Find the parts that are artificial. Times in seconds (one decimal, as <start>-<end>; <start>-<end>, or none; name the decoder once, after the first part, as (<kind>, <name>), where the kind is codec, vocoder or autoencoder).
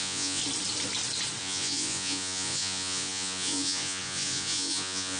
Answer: 0.0-0.4 (vocoder, Vocos); 1.4-5.2